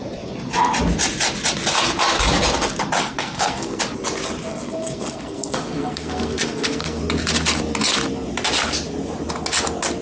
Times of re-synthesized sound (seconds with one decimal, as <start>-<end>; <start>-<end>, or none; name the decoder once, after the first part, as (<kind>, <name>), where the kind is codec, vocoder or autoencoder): 3.0-3.8 (codec, SNAC); 4.5-7.0